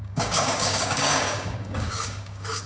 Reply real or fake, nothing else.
fake